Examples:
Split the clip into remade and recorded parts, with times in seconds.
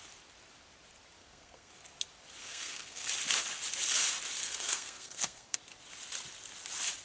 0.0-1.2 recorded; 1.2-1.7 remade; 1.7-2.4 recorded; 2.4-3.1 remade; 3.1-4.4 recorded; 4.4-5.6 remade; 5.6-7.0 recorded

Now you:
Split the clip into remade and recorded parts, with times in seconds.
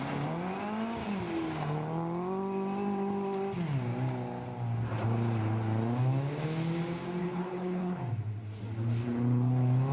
0.0-7.2 recorded; 7.2-8.0 remade; 8.0-9.9 recorded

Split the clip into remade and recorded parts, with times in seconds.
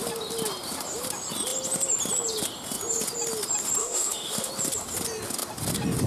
0.0-3.8 recorded; 3.8-4.5 remade; 4.5-6.1 recorded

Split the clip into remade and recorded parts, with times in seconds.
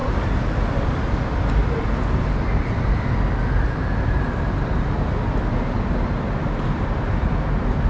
0.0-7.9 recorded